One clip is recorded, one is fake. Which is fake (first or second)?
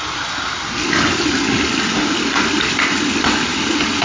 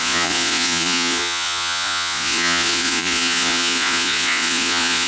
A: second